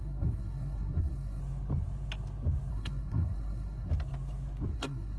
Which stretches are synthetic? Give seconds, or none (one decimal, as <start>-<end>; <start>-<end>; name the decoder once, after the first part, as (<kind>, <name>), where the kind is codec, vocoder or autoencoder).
0.0-1.4 (codec, SNAC); 2.7-3.9; 4.7-5.2